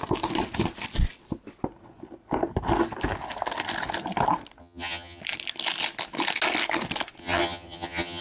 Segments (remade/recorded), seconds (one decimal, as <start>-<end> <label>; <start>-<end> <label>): 0.0-4.6 recorded; 4.6-5.2 remade; 5.2-7.2 recorded; 7.2-8.2 remade